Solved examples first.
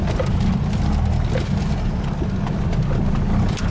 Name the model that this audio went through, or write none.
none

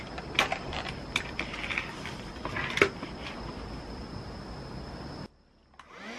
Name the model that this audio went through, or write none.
none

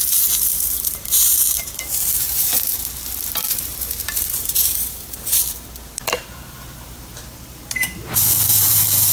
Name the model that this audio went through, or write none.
vocoder, BigVGAN v2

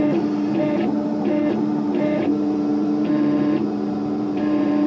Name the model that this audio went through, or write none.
vocoder, BigVGAN v2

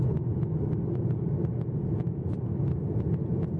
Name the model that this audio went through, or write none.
none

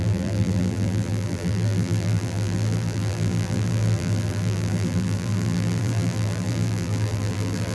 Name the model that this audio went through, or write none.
vocoder, BigVGAN v2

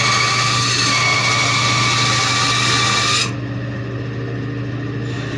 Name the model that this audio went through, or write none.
none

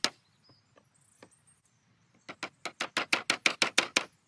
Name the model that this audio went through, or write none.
none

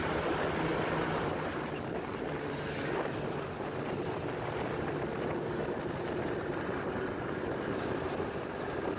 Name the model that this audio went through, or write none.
none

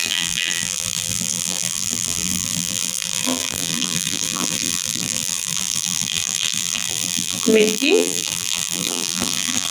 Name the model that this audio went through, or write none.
vocoder, BigVGAN v2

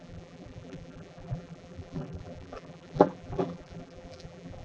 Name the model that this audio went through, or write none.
vocoder, BigVGAN v2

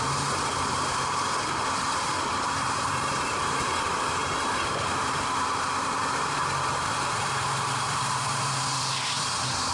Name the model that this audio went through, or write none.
vocoder, BigVGAN v2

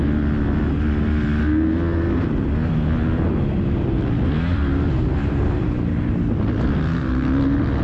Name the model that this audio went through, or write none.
none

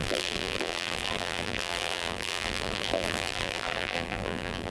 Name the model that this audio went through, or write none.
vocoder, BigVGAN v2